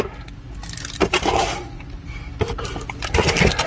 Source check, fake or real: real